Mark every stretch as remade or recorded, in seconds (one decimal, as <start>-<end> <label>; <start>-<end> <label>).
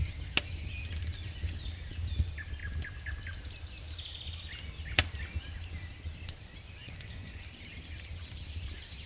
0.0-6.8 recorded; 6.8-7.4 remade; 7.4-9.1 recorded